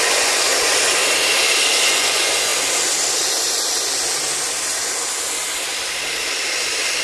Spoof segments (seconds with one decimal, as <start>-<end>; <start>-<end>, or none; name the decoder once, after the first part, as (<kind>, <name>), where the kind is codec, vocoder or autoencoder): 0.0-0.5 (vocoder, Vocos); 1.9-2.5